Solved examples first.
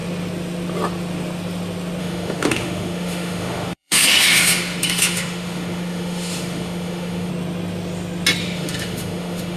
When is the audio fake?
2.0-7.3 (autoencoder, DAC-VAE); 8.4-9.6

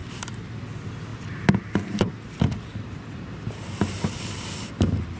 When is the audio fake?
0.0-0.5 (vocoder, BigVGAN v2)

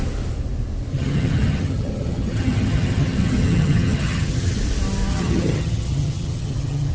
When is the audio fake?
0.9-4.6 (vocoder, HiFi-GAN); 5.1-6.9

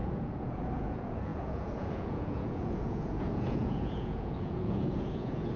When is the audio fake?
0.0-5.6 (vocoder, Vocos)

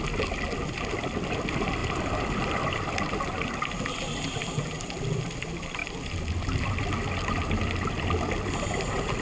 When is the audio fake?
1.8-2.9 (vocoder, BigVGAN v2)